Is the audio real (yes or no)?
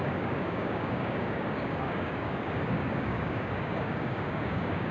no